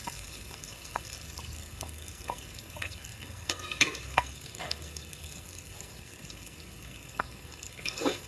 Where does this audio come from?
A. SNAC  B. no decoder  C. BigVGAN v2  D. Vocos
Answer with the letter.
A